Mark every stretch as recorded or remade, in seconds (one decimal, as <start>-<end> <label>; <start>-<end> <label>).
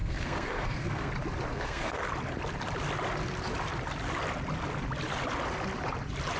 0.0-1.1 remade; 1.1-1.5 recorded; 1.5-2.0 remade; 2.0-6.4 recorded